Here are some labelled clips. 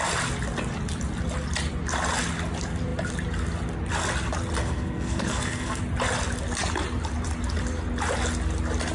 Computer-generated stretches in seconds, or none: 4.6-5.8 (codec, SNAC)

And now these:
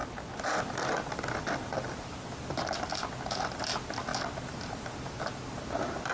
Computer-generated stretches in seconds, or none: none

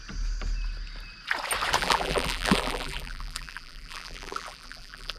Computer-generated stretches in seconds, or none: 1.8-5.2 (vocoder, BigVGAN v2)

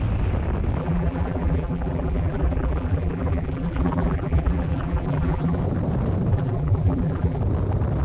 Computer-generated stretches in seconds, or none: 0.8-5.6 (vocoder, BigVGAN v2); 6.3-7.4

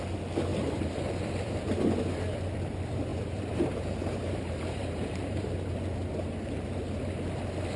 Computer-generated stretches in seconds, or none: 0.5-1.1 (vocoder, BigVGAN v2); 3.1-5.7